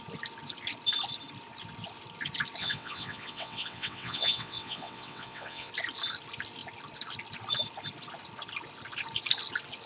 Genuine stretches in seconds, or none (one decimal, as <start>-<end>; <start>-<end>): 0.0-2.6; 5.7-9.9